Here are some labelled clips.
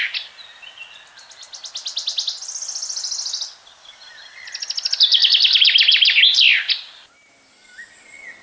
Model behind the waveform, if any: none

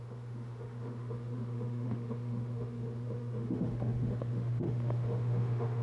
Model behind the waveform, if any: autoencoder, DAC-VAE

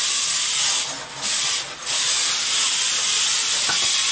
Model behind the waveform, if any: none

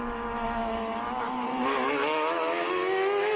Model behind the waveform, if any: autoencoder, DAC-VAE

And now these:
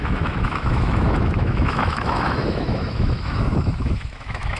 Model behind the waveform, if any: autoencoder, DAC-VAE